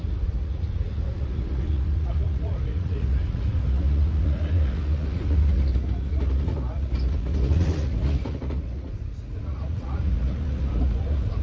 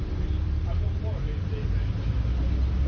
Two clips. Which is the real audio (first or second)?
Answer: second